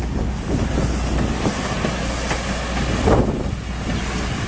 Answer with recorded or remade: recorded